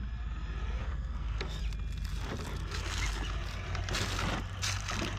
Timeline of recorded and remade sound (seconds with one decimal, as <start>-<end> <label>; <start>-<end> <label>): 0.0-0.8 recorded; 0.8-1.6 remade; 1.6-5.2 recorded